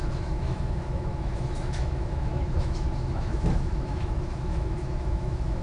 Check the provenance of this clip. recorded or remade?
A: remade